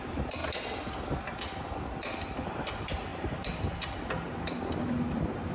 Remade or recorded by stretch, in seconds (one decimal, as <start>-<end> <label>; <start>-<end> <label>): 0.0-5.5 recorded